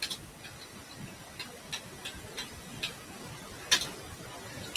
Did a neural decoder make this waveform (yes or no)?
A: no